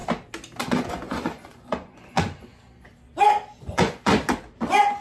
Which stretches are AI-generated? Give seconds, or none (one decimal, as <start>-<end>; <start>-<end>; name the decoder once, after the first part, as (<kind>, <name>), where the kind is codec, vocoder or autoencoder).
0.6-2.5 (vocoder, Vocos); 3.6-4.1